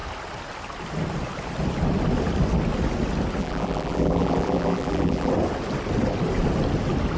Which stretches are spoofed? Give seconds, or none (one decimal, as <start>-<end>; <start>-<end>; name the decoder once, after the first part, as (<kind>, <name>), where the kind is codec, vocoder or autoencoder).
3.4-5.3 (vocoder, BigVGAN v2)